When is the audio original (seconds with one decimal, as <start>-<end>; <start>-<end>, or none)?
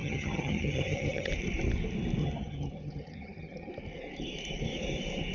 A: 1.3-2.2; 3.7-5.3